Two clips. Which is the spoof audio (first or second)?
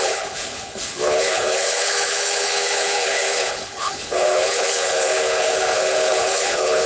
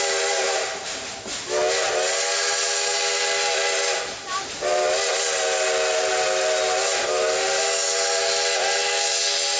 first